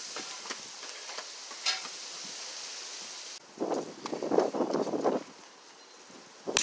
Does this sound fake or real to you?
real